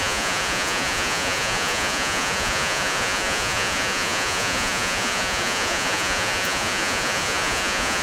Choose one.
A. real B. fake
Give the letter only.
B